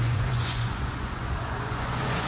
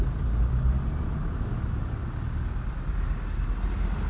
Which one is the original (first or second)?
second